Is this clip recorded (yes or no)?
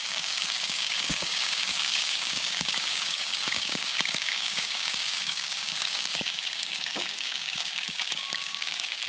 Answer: no